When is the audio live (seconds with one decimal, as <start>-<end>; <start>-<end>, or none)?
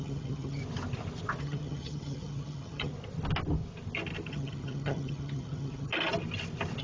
0.6-1.4; 2.9-4.3; 5.9-6.8